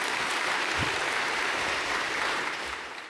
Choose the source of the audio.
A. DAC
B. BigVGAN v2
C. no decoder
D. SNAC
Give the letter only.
B